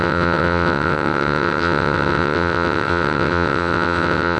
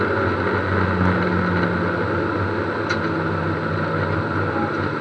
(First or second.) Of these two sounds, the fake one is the first